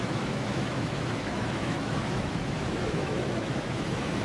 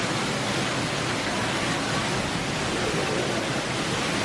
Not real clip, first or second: first